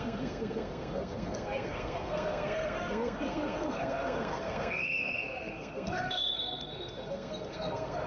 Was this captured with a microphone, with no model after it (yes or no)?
no